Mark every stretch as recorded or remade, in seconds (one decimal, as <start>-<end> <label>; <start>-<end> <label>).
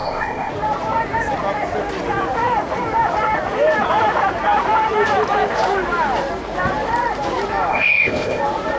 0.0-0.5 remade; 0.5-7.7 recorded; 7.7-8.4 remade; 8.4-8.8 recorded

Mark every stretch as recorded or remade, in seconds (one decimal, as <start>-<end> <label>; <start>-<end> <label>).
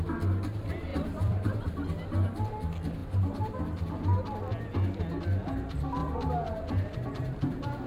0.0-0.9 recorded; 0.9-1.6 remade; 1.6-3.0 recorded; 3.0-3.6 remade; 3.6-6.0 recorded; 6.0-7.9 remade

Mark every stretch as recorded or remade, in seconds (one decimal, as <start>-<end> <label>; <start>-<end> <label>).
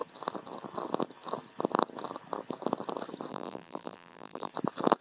0.0-3.3 recorded; 3.3-4.5 remade; 4.5-5.0 recorded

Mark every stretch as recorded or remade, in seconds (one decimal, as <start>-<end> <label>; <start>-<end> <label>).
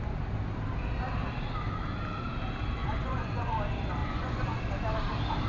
0.0-2.8 recorded; 2.8-3.5 remade; 3.5-4.0 recorded; 4.0-4.6 remade; 4.6-5.5 recorded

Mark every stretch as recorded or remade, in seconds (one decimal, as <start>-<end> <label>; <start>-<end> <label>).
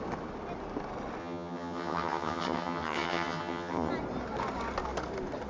0.0-1.2 recorded; 1.2-3.9 remade; 3.9-5.5 recorded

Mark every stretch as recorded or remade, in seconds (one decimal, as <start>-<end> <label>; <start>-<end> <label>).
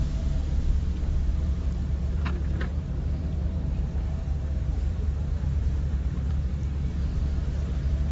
0.0-1.3 recorded; 1.3-2.3 remade; 2.3-2.7 recorded; 2.7-6.3 remade; 6.3-8.1 recorded